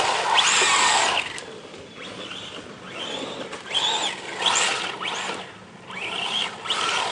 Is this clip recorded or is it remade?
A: recorded